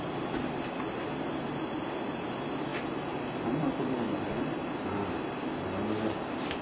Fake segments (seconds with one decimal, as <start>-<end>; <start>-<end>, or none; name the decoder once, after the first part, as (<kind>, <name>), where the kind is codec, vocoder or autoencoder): none